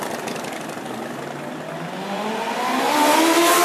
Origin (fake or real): real